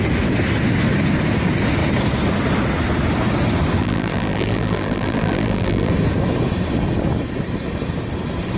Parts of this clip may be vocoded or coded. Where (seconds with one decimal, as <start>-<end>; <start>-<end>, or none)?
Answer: 3.8-5.9